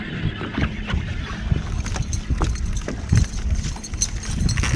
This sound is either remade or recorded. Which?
recorded